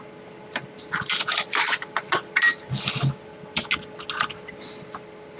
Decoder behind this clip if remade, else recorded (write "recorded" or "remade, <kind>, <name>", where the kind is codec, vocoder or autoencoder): recorded